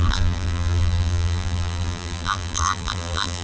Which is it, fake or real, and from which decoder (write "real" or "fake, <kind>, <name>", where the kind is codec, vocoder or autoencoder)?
fake, vocoder, BigVGAN v2